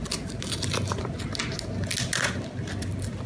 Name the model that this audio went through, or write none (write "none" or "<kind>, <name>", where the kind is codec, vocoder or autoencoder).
none